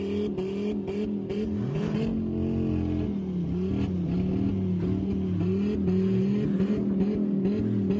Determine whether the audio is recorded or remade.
recorded